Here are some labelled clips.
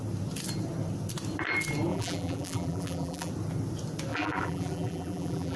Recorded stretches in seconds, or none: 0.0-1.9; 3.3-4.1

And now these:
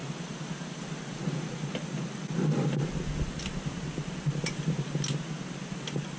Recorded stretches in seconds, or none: 0.0-6.2